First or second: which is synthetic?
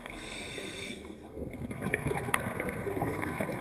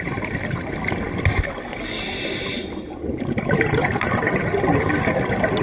first